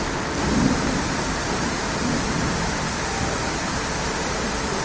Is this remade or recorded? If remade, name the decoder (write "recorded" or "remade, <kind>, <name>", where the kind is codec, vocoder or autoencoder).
recorded